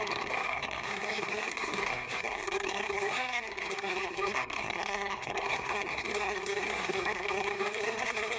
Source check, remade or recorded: remade